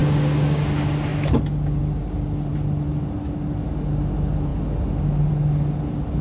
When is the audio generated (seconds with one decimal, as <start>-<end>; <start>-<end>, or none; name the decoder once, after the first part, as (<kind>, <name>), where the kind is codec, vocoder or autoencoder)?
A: 0.0-0.6 (codec, DAC)